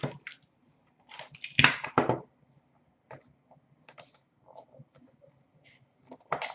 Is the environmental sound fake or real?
real